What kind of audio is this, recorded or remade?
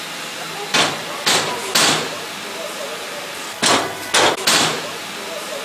recorded